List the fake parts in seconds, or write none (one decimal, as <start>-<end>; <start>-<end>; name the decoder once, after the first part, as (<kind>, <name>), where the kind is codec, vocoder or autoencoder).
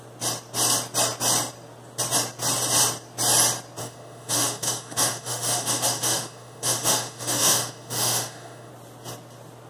3.8-8.7 (autoencoder, DAC-VAE)